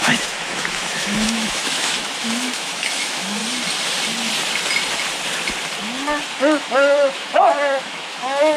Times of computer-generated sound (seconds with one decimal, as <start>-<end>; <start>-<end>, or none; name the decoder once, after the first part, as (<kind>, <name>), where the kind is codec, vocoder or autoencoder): 0.0-3.4 (autoencoder, DAC-VAE); 6.3-8.6